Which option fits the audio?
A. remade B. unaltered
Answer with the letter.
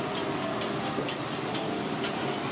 B